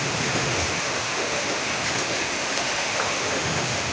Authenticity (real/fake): fake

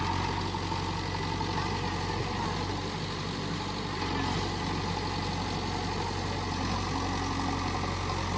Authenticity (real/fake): real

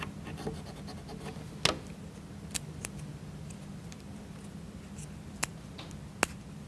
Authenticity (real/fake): real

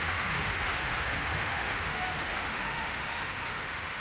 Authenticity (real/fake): fake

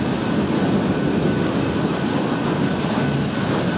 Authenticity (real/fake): real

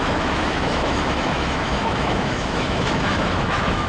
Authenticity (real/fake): fake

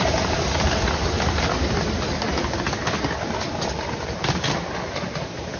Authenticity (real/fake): real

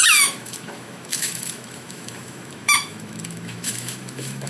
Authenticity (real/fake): fake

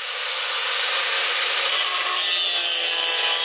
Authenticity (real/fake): real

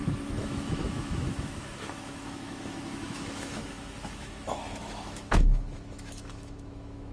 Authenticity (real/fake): fake